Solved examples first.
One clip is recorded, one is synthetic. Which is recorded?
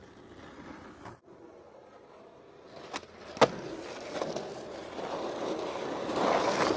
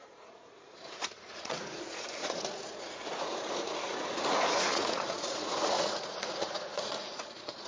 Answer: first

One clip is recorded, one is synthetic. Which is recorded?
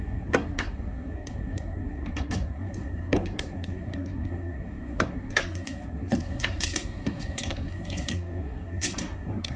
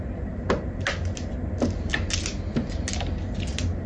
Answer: second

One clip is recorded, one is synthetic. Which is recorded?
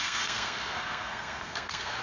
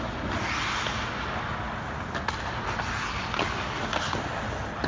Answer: second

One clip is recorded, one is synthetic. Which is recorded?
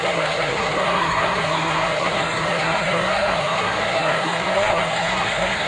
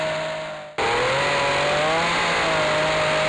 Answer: second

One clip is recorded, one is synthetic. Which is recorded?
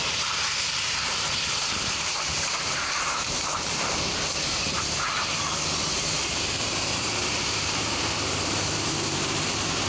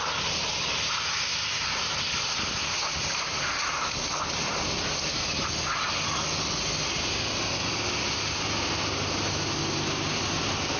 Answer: second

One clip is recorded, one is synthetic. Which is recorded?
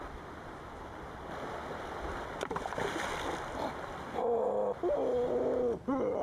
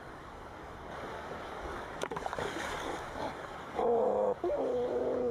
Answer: first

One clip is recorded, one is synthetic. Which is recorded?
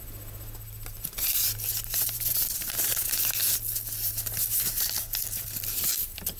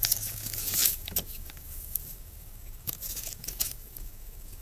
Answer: first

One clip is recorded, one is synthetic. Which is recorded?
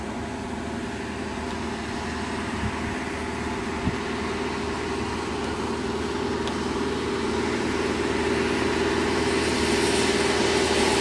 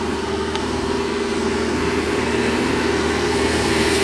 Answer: first